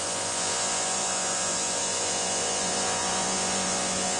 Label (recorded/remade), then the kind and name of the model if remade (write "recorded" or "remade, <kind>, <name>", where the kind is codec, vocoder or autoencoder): remade, vocoder, Vocos